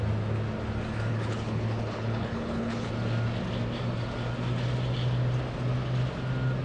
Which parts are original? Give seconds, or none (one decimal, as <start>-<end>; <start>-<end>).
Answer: 0.0-1.1; 2.9-6.6